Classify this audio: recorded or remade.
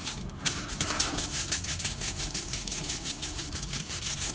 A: remade